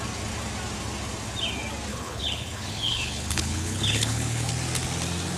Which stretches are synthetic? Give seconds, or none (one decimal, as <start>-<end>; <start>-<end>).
1.9-4.5